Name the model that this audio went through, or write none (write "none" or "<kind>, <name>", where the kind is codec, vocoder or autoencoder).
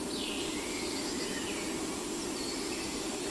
vocoder, BigVGAN v2